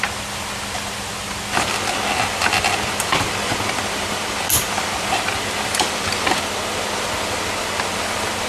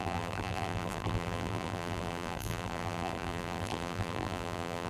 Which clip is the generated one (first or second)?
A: second